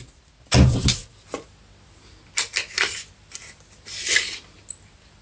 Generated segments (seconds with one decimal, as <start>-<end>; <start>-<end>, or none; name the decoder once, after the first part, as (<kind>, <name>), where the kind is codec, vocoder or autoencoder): none